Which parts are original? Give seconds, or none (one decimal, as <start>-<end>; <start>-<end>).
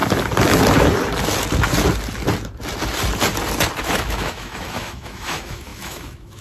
0.0-3.8